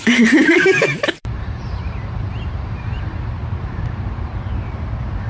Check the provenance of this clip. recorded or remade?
remade